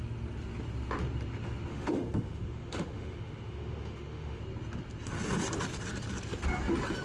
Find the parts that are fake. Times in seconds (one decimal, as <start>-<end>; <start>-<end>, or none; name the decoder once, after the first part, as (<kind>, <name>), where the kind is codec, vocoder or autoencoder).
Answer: 1.7-4.4 (autoencoder, DAC-VAE)